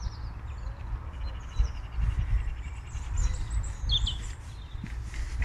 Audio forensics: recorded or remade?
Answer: recorded